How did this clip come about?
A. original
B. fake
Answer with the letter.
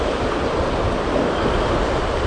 A